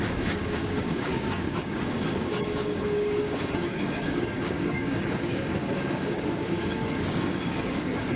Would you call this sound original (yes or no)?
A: no